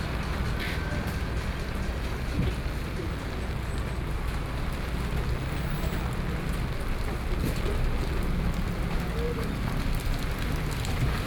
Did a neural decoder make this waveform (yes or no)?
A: no